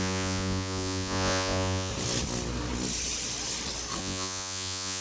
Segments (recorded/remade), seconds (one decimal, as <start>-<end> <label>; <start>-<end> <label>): 0.0-1.9 remade; 1.9-4.0 recorded; 4.0-5.0 remade